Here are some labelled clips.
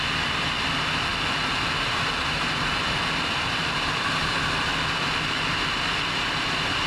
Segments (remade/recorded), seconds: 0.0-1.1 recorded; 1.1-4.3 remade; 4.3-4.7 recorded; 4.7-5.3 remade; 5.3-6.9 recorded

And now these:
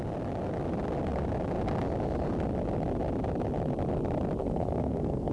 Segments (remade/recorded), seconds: 0.0-4.4 recorded; 4.4-5.3 remade

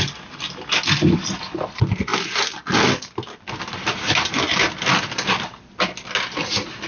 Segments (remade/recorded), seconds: 0.0-6.9 recorded

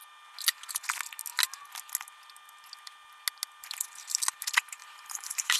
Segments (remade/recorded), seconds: 0.0-4.8 recorded; 4.8-5.6 remade

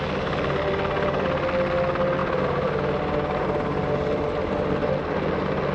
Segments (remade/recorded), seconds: 0.0-5.7 recorded

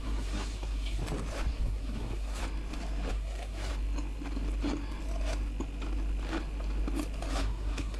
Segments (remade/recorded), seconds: 0.0-1.0 remade; 1.0-1.5 recorded; 1.5-2.4 remade; 2.4-3.1 recorded; 3.1-3.7 remade; 3.7-7.3 recorded; 7.3-8.0 remade

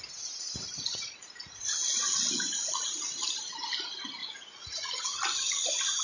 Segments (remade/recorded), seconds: 0.0-4.2 recorded; 4.2-5.0 remade; 5.0-6.0 recorded